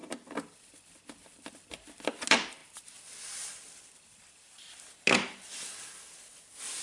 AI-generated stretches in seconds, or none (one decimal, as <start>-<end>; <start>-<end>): none